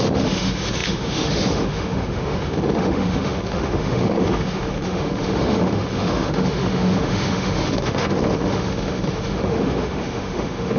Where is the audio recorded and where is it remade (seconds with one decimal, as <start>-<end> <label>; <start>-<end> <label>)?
0.0-10.8 remade